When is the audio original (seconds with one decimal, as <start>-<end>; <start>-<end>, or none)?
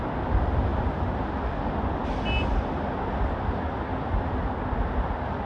0.7-4.0